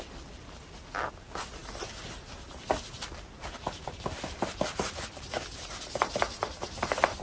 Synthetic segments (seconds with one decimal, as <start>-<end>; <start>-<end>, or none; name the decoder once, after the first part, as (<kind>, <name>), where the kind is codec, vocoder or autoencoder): none